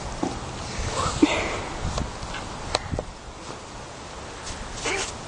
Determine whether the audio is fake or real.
real